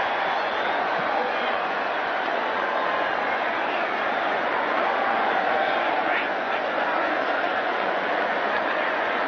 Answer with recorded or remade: remade